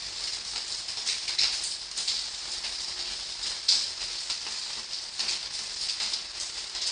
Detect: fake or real real